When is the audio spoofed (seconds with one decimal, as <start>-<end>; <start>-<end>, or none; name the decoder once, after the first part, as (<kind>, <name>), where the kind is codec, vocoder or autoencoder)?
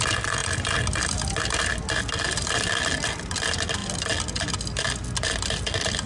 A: none